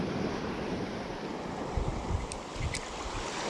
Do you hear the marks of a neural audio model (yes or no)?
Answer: no